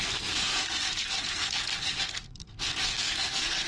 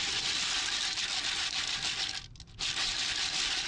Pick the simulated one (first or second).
first